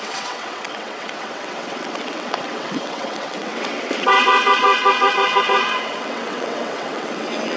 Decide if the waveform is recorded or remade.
remade